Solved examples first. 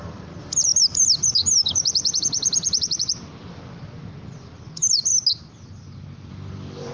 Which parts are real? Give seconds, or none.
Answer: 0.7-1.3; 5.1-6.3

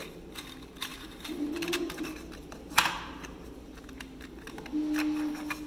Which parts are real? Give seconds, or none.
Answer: 0.0-0.9; 4.3-5.7

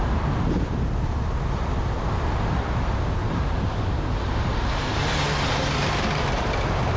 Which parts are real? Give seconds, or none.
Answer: 0.0-3.2; 4.3-7.0

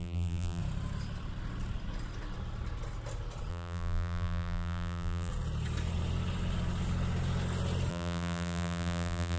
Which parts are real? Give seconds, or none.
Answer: 0.6-3.5; 5.3-7.9

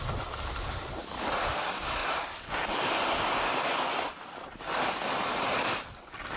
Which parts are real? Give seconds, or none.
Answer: 0.0-6.4

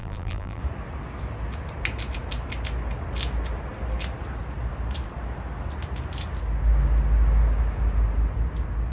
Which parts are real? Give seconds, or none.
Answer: 0.6-8.9